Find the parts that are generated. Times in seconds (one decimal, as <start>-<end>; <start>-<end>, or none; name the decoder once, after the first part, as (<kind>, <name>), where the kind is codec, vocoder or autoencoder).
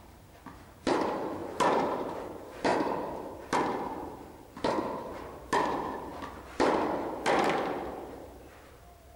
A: 0.0-6.1 (vocoder, BigVGAN v2); 8.1-9.2